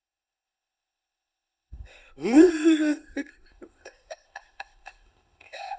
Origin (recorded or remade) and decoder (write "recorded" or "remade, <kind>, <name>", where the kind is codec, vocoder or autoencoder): remade, codec, ZipCodec